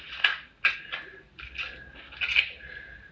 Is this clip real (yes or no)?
yes